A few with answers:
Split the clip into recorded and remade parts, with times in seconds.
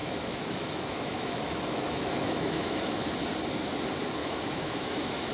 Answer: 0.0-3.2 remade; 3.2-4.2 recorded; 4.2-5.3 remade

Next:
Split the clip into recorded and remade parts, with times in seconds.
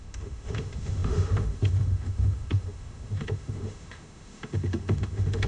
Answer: 0.0-5.5 remade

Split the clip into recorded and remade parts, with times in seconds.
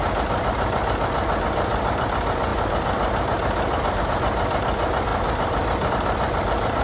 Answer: 0.0-6.8 recorded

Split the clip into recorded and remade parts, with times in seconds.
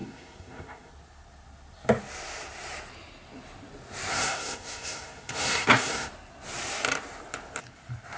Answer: 0.0-0.9 remade; 0.9-4.1 recorded; 4.1-6.1 remade; 6.1-8.2 recorded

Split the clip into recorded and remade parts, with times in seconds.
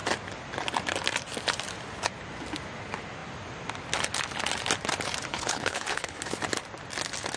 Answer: 0.0-5.3 recorded; 5.3-6.2 remade; 6.2-7.4 recorded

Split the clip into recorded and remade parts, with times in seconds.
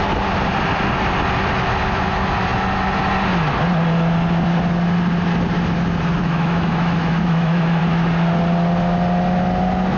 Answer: 0.0-6.2 recorded; 6.2-7.8 remade; 7.8-10.0 recorded